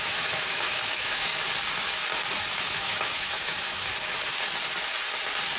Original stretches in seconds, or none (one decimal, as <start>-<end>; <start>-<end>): 1.3-2.5; 3.9-5.6